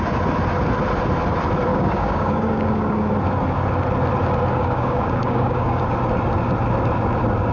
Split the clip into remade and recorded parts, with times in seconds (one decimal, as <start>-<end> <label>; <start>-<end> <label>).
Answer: 0.0-1.7 recorded; 1.7-3.1 remade; 3.1-4.5 recorded; 4.5-5.8 remade; 5.8-7.5 recorded